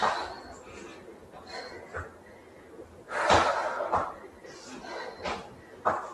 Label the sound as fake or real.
real